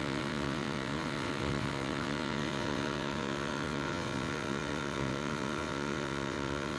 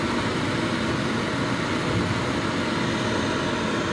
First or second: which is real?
second